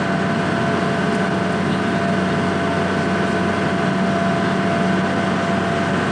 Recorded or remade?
recorded